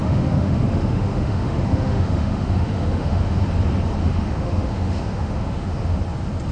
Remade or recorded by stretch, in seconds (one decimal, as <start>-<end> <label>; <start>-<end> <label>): 0.0-3.4 remade; 3.4-4.0 recorded; 4.0-6.0 remade; 6.0-6.5 recorded